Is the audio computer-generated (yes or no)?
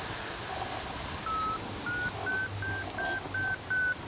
no